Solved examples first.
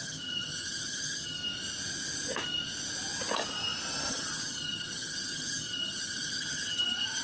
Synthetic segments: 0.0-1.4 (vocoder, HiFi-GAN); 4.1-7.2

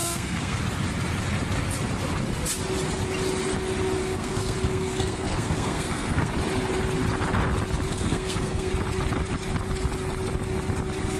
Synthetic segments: 0.0-0.6 (codec, SNAC); 4.0-6.3; 7.9-8.7

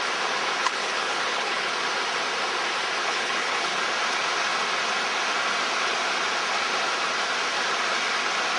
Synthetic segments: 0.6-1.7 (codec, HILCodec); 3.0-3.8

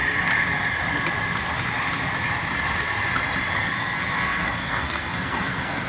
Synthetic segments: 3.5-5.9 (codec, SNAC)

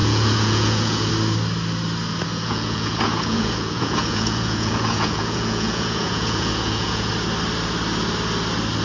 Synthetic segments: 0.0-1.1 (vocoder, Vocos); 2.3-7.1

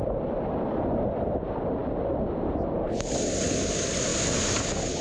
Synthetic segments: 0.0-1.8 (vocoder, BigVGAN v2); 2.3-4.1; 4.6-5.0